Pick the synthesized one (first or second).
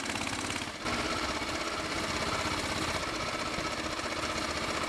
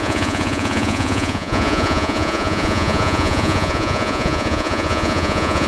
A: second